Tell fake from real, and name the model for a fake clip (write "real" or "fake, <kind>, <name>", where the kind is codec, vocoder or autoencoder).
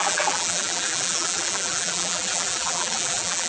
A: fake, vocoder, BigVGAN v2